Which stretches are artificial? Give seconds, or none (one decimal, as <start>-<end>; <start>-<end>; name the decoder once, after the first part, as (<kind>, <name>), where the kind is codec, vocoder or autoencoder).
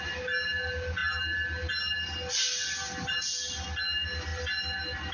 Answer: none